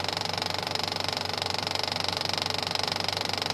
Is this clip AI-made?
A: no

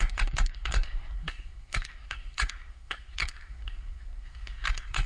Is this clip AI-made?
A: yes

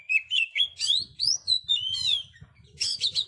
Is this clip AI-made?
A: yes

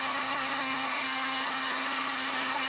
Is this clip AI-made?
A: yes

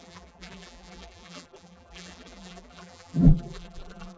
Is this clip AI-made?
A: yes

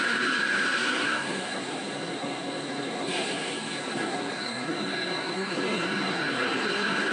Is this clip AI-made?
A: yes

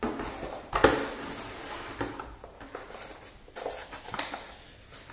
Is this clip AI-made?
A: no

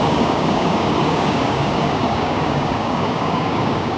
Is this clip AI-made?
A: yes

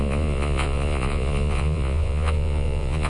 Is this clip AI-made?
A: yes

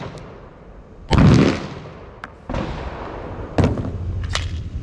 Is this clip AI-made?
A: no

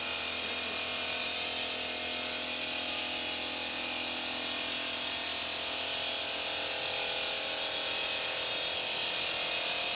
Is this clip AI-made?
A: no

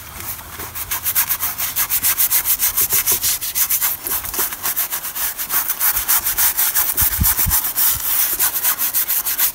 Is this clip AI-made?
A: no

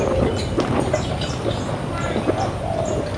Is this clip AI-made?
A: no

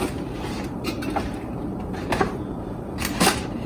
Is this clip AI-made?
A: yes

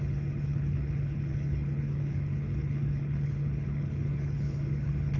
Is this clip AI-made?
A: yes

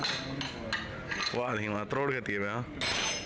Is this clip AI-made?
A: no